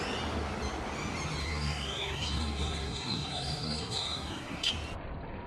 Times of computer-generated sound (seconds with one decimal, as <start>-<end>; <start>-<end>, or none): 1.4-4.7